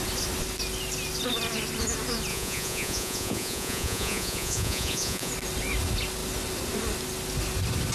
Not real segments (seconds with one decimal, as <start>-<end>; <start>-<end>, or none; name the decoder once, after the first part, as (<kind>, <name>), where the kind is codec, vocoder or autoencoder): 2.3-5.3 (vocoder, Vocos)